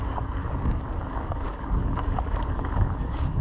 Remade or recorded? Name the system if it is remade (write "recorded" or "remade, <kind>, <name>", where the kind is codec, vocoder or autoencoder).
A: remade, codec, DAC